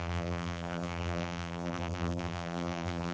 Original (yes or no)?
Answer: no